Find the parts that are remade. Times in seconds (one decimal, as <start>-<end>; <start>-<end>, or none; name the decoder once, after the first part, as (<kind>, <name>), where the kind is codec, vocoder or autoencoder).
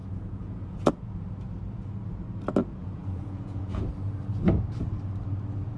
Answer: 0.0-0.9 (vocoder, Vocos); 2.8-3.9